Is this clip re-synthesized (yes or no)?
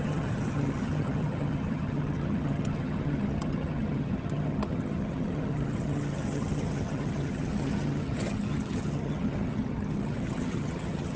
yes